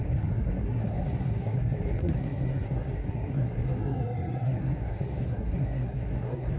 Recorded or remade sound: remade